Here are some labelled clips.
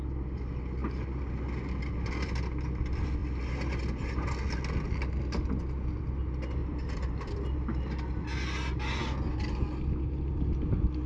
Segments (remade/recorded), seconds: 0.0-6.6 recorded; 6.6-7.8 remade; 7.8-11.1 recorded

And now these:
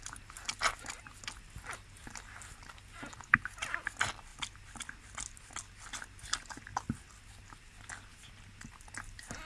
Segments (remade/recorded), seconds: 0.0-9.5 recorded

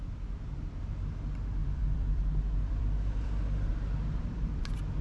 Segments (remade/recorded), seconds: 0.0-0.7 remade; 0.7-1.6 recorded; 1.6-4.6 remade; 4.6-5.0 recorded